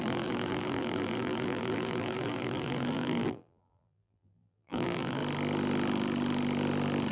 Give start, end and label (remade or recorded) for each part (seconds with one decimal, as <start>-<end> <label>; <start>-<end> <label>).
0.0-5.2 remade; 5.2-7.1 recorded